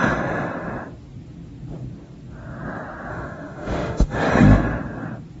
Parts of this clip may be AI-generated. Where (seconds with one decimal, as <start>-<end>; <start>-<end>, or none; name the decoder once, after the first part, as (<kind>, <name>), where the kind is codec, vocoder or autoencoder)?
3.1-4.3 (autoencoder, DAC-VAE)